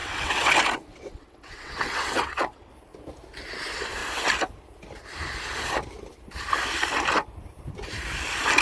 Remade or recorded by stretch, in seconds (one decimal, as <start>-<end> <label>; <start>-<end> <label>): 0.0-0.5 remade; 0.5-0.9 recorded; 0.9-2.7 remade; 2.7-8.6 recorded